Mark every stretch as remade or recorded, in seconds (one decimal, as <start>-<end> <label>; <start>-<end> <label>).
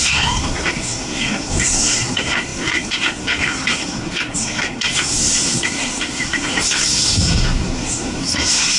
0.0-8.8 remade